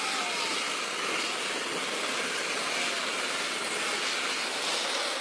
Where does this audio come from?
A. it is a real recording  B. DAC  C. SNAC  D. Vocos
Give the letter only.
A